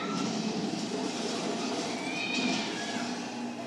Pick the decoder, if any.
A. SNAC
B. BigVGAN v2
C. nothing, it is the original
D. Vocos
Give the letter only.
C